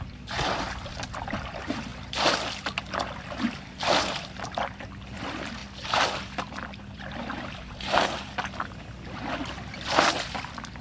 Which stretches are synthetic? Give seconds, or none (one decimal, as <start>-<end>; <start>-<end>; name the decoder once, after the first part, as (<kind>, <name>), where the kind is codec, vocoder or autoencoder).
0.0-5.6 (vocoder, BigVGAN v2); 8.8-10.8